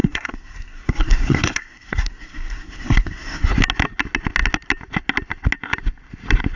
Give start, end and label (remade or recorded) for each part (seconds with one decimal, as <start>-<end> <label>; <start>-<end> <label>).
0.0-3.5 remade; 3.5-6.6 recorded